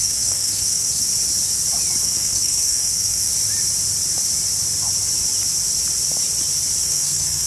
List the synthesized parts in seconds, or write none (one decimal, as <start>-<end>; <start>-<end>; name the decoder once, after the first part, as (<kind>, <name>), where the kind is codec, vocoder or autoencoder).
0.0-1.1 (codec, SNAC); 2.0-3.3; 6.8-7.5